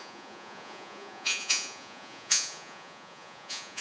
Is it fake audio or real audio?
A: fake